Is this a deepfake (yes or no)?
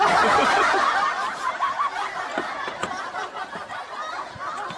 no